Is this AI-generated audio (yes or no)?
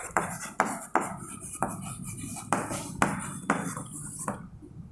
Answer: no